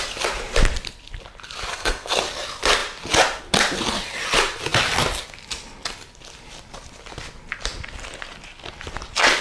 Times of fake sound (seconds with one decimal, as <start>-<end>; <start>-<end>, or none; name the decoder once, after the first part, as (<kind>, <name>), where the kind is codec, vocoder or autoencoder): 1.7-2.2 (codec, SNAC)